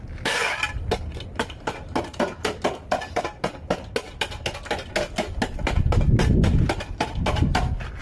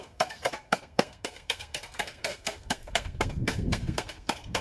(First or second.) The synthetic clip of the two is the second